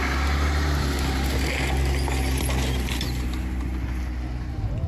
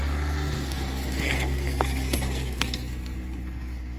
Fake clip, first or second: second